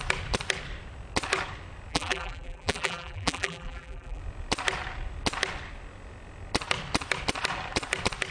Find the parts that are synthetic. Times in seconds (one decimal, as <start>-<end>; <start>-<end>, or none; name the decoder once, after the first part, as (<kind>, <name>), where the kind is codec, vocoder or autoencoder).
1.9-4.2 (vocoder, BigVGAN v2)